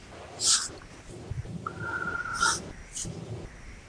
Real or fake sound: real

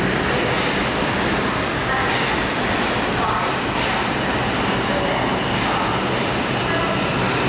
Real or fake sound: real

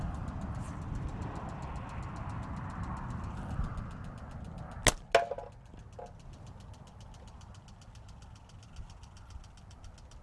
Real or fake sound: real